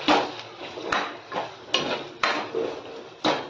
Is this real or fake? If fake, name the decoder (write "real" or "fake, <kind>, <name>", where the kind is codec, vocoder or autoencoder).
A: real